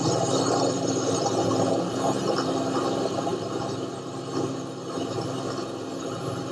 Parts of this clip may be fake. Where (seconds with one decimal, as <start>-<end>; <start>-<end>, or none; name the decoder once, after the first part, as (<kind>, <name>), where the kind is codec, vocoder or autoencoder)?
0.0-3.3 (vocoder, BigVGAN v2); 5.9-6.5